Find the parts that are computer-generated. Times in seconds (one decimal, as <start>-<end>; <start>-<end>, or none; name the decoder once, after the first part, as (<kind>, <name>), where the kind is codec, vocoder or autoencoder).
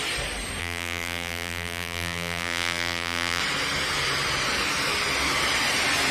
0.6-3.4 (vocoder, BigVGAN v2)